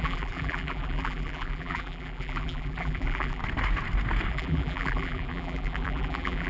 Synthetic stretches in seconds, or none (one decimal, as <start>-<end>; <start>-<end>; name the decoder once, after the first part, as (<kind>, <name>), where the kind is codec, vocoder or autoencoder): 0.0-3.4 (vocoder, BigVGAN v2); 4.3-6.5